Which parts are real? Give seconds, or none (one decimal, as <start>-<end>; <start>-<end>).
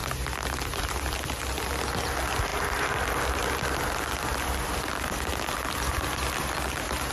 0.0-7.1